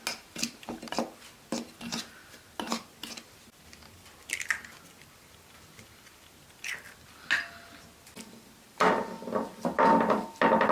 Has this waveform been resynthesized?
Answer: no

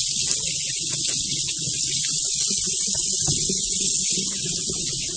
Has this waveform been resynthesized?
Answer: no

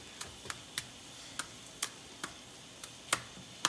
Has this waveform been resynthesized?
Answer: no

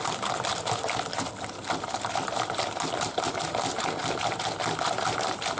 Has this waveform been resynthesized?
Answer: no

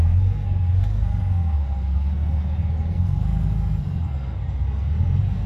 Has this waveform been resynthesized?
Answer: yes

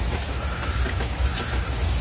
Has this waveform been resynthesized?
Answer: no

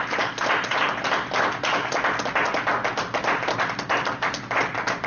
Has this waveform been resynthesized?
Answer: no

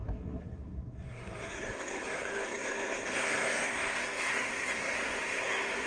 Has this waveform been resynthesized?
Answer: yes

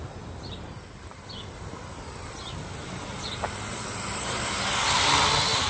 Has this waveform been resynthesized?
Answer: no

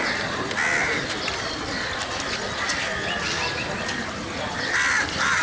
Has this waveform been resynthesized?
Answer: no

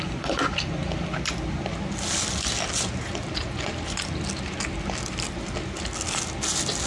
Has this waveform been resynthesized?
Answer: no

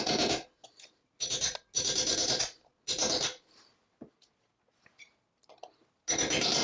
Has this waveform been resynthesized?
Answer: no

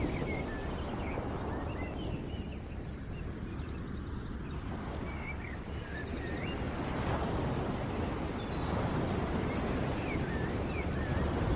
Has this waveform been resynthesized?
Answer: no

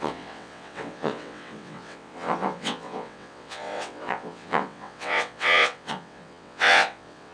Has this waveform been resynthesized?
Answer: yes